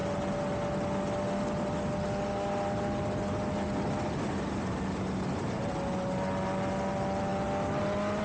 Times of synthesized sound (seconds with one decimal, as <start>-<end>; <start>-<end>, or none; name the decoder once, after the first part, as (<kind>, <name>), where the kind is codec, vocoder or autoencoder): none